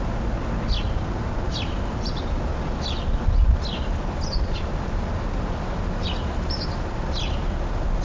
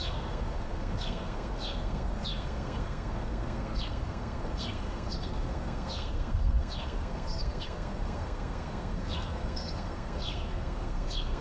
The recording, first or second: first